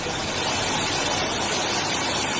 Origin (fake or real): real